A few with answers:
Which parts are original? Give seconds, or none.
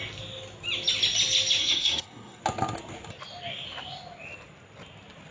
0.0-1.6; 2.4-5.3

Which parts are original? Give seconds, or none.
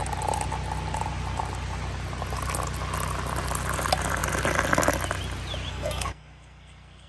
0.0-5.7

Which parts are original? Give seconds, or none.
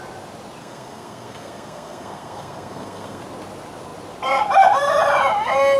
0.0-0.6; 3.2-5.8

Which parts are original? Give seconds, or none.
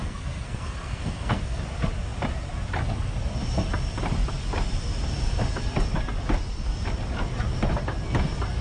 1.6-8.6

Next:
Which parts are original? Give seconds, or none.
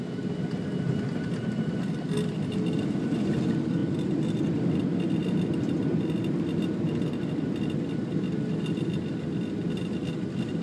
0.0-10.6